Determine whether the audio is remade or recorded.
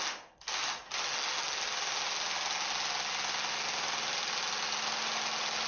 recorded